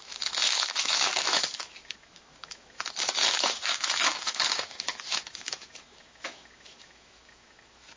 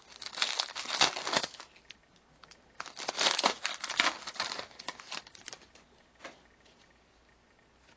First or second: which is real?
second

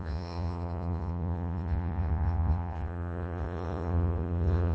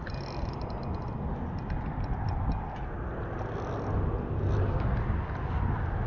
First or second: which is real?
second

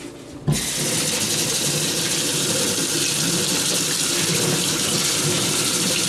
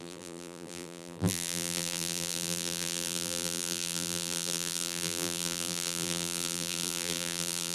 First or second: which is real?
first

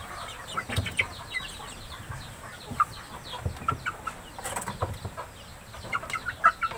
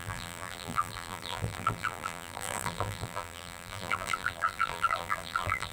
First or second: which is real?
first